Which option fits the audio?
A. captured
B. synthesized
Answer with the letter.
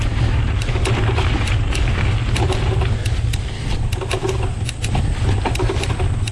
A